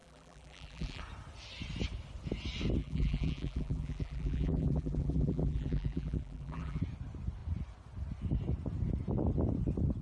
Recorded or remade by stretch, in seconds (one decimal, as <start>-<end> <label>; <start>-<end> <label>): 0.0-1.0 remade; 1.0-2.8 recorded; 2.8-6.8 remade; 6.8-10.0 recorded